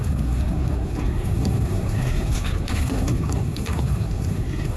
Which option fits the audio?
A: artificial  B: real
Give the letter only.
A